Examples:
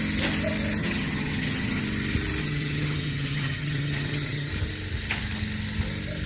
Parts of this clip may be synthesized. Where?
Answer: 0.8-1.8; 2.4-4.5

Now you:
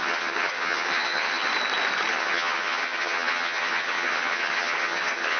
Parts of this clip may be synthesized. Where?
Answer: 0.0-1.5; 2.1-5.4